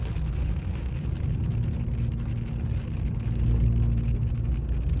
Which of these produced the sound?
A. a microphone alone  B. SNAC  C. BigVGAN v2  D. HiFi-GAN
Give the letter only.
A